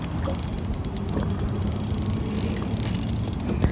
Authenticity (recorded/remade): recorded